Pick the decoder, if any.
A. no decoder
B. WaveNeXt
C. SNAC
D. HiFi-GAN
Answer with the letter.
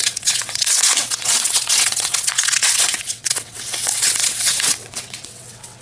B